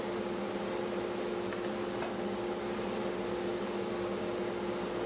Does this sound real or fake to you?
real